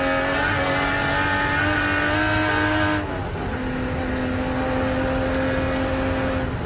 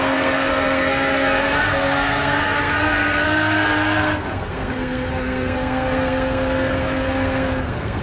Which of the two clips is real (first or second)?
first